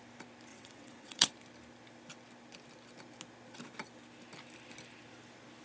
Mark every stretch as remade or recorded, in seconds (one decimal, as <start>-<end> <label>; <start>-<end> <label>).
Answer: 0.0-0.5 recorded; 0.5-1.3 remade; 1.3-5.6 recorded